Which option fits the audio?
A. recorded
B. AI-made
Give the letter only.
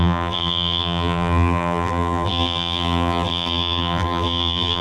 B